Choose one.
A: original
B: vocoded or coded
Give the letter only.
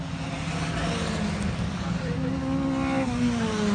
A